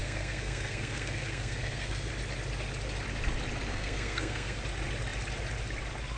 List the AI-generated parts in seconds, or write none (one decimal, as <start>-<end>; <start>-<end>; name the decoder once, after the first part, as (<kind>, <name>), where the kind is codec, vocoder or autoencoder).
0.0-2.1 (codec, SNAC); 3.7-4.6